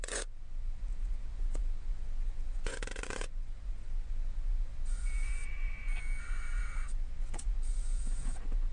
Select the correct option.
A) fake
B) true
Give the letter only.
A